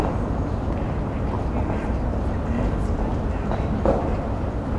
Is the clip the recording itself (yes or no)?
yes